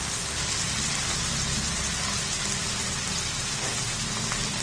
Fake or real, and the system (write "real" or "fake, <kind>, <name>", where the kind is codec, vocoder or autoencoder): real